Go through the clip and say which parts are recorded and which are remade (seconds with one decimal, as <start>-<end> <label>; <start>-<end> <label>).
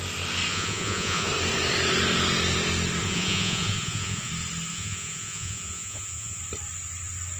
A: 0.0-0.5 recorded; 0.5-1.3 remade; 1.3-3.0 recorded; 3.0-4.3 remade; 4.3-4.7 recorded; 4.7-6.4 remade; 6.4-7.4 recorded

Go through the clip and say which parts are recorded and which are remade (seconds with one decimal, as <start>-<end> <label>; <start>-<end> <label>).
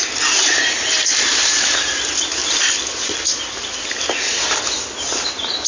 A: 0.0-5.7 recorded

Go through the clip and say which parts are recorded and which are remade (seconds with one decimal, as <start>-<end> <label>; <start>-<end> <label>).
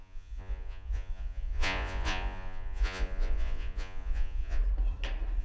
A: 0.0-4.6 remade; 4.6-5.4 recorded